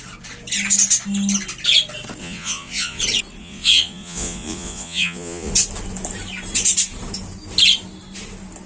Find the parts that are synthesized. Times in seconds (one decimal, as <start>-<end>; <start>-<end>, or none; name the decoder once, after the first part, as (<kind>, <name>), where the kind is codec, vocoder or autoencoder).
2.2-3.0 (vocoder, Vocos); 3.4-5.5